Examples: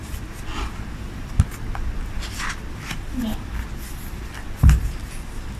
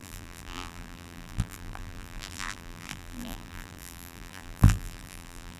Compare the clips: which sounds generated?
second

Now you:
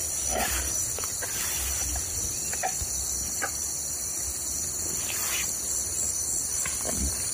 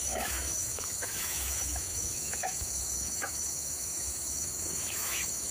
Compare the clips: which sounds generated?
second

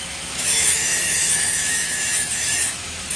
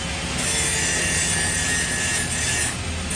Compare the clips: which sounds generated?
first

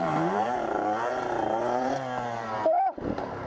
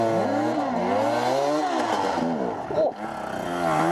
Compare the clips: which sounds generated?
first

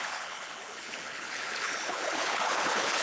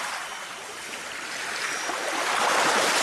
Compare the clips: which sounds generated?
first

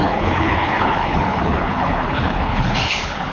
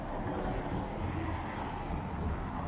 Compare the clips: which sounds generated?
first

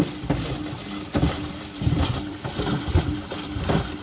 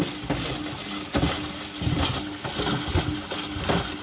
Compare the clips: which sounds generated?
first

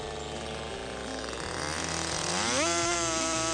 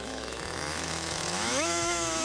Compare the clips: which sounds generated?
second